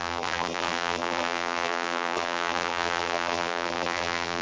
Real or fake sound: fake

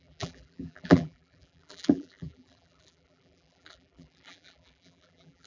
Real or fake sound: fake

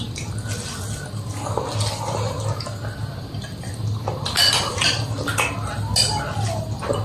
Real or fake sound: real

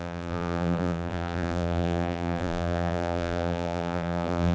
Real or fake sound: fake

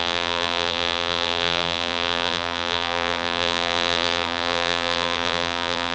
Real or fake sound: fake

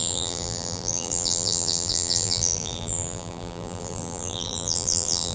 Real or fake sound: fake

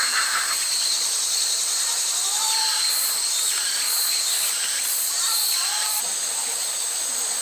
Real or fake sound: fake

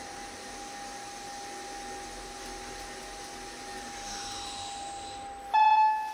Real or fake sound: real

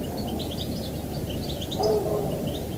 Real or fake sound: fake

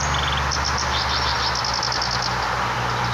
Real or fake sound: real